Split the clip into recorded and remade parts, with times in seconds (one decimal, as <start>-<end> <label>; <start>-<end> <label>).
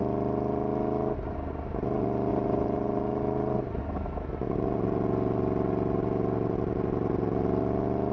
0.0-2.3 recorded; 2.3-3.8 remade; 3.8-8.1 recorded